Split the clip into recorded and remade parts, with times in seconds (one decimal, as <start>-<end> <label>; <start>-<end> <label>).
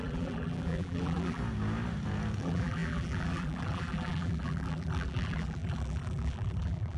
0.0-1.4 remade; 1.4-2.4 recorded; 2.4-7.0 remade